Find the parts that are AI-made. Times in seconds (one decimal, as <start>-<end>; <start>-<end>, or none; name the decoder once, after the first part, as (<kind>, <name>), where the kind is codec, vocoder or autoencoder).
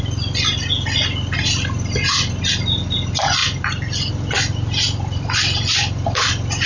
none